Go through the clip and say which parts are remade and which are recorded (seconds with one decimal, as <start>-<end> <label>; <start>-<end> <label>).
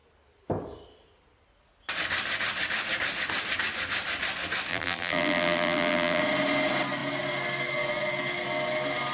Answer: 0.0-4.7 recorded; 4.7-6.2 remade; 6.2-9.1 recorded